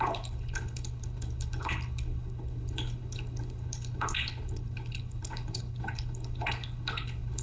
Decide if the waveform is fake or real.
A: fake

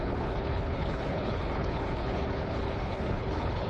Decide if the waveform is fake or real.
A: fake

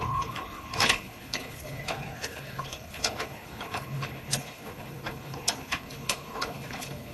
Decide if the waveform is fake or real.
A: fake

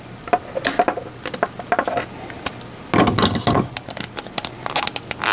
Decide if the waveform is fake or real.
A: real